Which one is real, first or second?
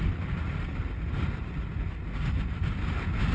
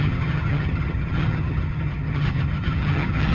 first